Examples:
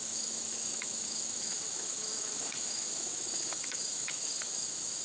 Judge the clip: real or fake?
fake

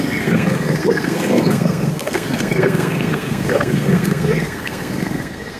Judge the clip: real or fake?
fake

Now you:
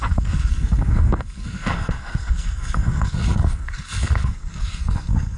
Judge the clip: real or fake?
fake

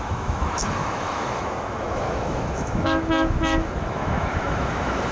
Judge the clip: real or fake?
fake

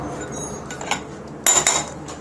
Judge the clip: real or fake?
real